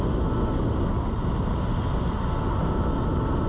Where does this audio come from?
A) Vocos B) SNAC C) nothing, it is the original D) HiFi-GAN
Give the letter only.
C